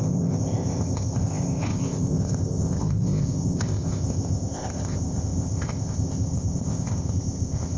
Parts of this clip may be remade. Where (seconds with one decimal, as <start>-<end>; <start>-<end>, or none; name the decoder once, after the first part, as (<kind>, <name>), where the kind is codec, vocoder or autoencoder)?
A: 0.0-7.8 (codec, ZipCodec)